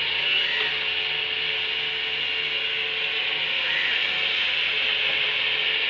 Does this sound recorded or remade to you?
recorded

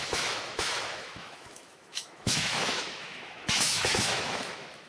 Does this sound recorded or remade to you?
remade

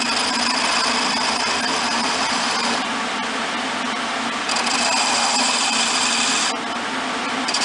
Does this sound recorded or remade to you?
recorded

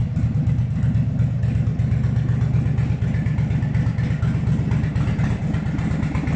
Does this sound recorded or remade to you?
recorded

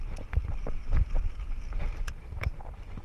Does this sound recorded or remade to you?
recorded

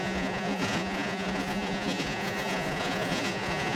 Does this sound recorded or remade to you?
remade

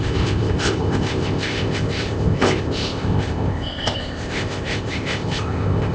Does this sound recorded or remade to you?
remade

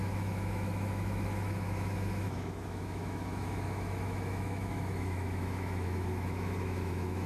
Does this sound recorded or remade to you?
remade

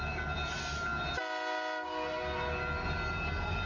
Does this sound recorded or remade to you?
recorded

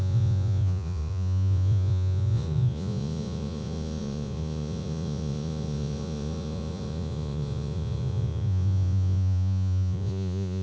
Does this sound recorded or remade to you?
remade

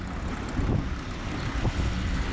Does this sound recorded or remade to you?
recorded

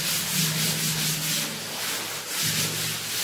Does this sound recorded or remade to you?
recorded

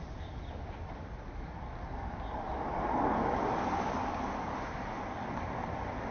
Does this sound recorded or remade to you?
recorded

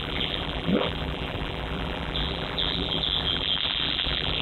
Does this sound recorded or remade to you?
remade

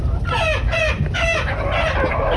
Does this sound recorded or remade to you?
recorded